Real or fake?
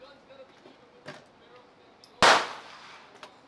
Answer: real